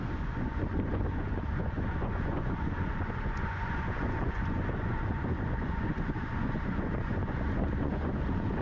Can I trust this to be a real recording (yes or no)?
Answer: no